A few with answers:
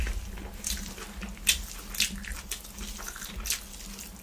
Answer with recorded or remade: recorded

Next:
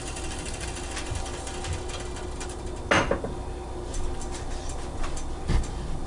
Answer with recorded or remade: recorded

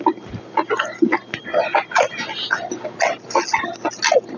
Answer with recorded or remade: recorded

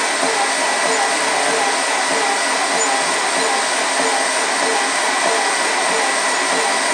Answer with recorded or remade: recorded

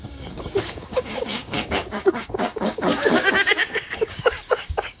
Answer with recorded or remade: remade